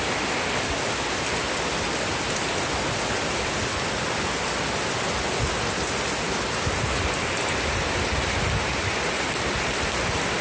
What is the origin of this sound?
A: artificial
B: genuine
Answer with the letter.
B